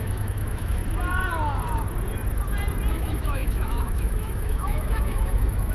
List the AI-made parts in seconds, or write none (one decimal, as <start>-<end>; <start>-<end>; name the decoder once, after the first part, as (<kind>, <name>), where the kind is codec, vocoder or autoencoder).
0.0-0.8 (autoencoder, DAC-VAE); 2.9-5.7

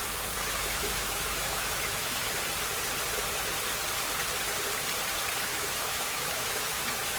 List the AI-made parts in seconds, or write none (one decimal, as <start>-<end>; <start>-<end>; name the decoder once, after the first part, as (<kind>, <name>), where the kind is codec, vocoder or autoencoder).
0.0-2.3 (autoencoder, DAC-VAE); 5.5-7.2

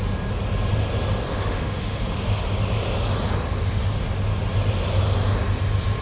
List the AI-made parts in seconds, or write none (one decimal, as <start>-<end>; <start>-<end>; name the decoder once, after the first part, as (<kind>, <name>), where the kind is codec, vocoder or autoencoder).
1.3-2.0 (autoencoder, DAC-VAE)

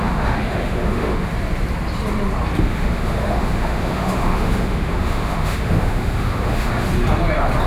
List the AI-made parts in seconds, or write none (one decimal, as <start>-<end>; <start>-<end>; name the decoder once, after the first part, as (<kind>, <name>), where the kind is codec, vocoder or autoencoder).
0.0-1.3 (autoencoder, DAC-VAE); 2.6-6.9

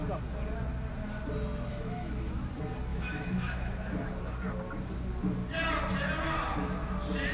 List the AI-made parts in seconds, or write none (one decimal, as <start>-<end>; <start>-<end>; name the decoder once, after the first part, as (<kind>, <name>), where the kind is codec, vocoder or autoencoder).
1.7-2.4 (autoencoder, DAC-VAE); 2.9-3.7

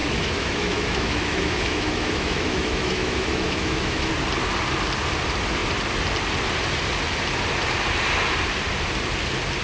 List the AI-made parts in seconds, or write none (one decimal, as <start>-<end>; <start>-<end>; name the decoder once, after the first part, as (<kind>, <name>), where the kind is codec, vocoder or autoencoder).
0.0-4.1 (autoencoder, DAC-VAE)